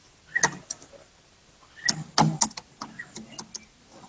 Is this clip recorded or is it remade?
recorded